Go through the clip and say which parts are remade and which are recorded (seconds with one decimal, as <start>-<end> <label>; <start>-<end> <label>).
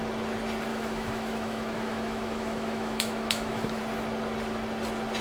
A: 0.0-0.7 recorded; 0.7-3.8 remade; 3.8-5.2 recorded